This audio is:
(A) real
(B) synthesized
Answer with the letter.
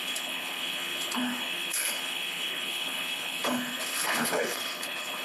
B